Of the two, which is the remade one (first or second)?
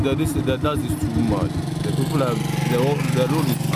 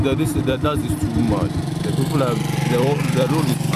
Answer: second